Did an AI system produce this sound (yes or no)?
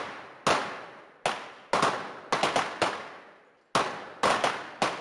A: no